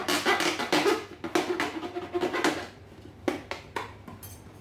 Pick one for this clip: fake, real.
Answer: real